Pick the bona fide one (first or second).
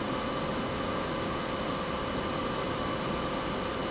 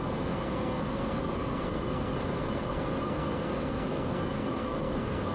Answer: first